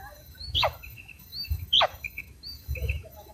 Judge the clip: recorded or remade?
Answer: remade